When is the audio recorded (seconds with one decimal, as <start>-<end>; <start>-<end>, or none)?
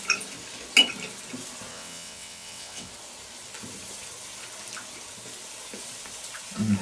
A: 0.0-1.7; 2.9-6.8